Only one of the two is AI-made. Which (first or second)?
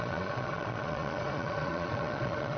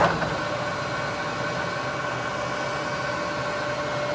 first